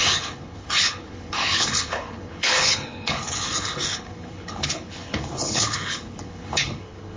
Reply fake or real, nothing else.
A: fake